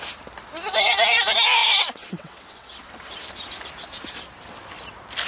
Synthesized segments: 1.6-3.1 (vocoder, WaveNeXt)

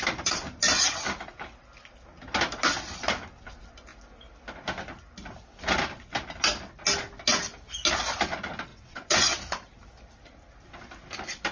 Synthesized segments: 8.7-9.4 (vocoder, WaveNeXt)

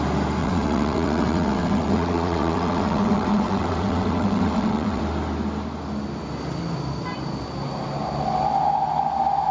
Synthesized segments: 0.4-5.0 (vocoder, WaveNeXt)